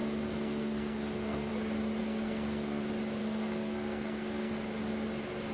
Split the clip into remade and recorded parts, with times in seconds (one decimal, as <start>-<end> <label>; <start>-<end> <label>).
0.0-1.5 remade; 1.5-2.0 recorded; 2.0-2.8 remade; 2.8-3.2 recorded; 3.2-4.5 remade; 4.5-5.5 recorded